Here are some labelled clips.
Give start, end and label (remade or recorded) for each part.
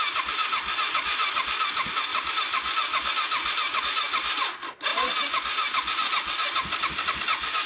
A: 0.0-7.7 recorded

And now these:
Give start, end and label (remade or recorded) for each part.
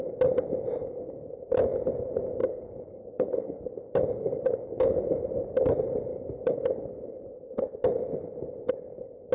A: 0.0-0.8 recorded; 0.8-1.3 remade; 1.3-2.4 recorded; 2.4-5.2 remade; 5.2-6.1 recorded; 6.1-7.3 remade; 7.3-9.3 recorded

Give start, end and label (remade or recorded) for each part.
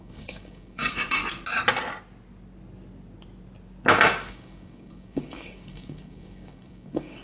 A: 0.0-1.2 remade; 1.2-4.3 recorded; 4.3-7.2 remade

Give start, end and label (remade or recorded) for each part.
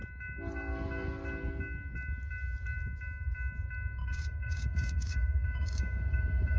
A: 0.0-4.0 recorded; 4.0-6.6 remade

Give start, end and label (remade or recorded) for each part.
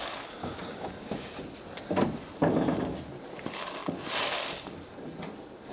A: 0.0-0.4 recorded; 0.4-1.4 remade; 1.4-5.7 recorded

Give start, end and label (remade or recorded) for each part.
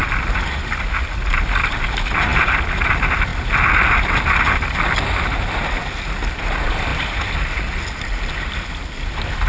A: 0.0-9.5 recorded